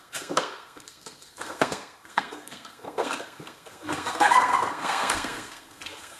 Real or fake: fake